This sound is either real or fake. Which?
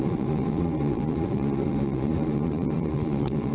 fake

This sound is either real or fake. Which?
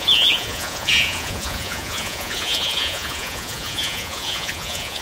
fake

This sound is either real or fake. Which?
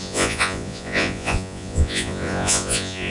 fake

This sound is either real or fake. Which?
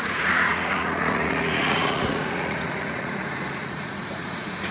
fake